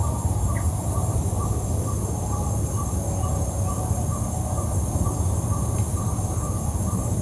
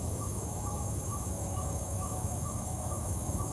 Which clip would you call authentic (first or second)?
first